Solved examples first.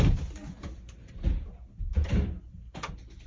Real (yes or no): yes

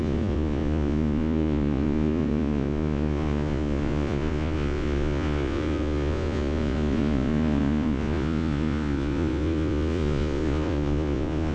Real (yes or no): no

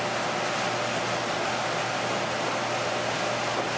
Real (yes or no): yes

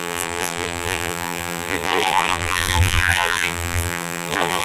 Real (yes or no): no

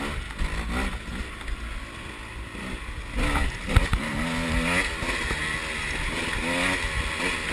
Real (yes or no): yes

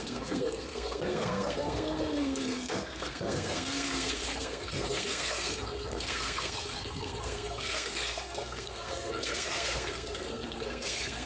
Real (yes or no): no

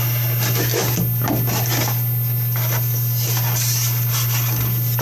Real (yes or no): yes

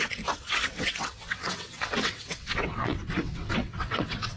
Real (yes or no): no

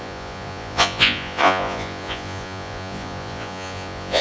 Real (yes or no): no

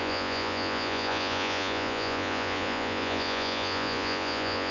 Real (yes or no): no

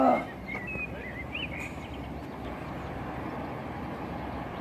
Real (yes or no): yes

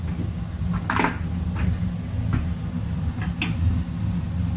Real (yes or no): yes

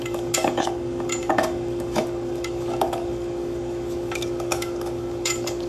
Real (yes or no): no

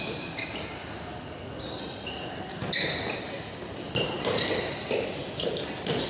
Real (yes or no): yes